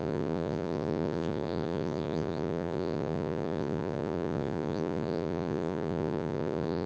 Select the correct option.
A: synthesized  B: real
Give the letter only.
A